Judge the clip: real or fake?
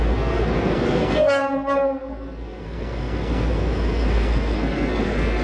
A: fake